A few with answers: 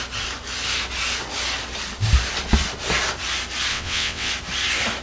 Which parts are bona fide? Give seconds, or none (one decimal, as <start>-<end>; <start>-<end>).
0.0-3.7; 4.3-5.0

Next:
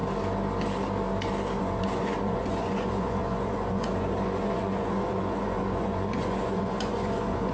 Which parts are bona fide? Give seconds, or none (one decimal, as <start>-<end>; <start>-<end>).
0.0-1.6

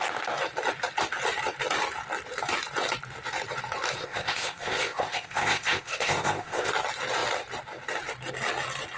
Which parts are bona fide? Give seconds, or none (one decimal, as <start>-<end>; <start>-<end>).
0.0-4.0; 6.7-9.0

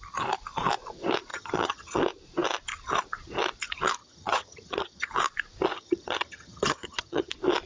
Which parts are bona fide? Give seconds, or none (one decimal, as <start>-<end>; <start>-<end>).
0.0-1.3; 2.0-4.0; 5.1-5.7; 7.3-7.7